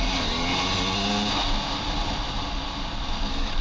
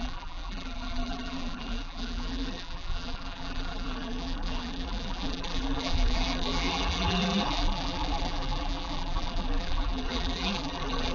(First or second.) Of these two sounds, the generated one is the second